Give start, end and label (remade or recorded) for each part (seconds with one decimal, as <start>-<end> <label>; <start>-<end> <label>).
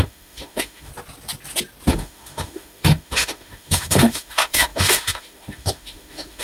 0.0-0.9 remade; 0.9-1.9 recorded; 1.9-6.4 remade